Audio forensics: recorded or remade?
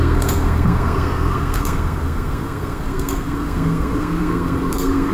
remade